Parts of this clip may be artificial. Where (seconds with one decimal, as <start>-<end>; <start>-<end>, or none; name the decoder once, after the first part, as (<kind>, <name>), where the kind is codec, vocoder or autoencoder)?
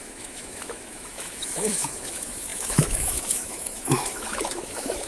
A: 0.0-5.1 (autoencoder, DAC-VAE)